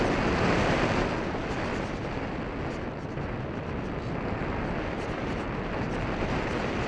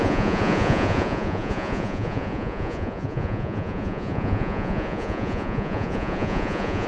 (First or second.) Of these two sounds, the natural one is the first